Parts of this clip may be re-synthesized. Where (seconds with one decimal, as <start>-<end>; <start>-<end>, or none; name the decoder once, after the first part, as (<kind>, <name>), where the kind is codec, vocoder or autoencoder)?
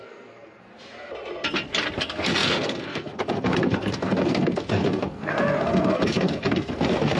0.0-0.7 (codec, SNAC); 2.0-7.2